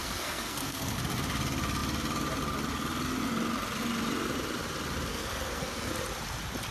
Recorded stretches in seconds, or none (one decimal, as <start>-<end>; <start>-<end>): 1.0-5.1; 5.9-6.7